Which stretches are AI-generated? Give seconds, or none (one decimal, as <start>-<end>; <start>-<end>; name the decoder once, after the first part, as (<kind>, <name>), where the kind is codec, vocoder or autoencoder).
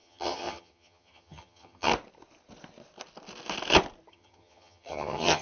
0.0-1.9 (vocoder, HiFi-GAN); 4.1-5.4